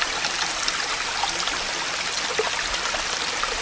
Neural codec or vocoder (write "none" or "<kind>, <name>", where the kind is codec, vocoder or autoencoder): none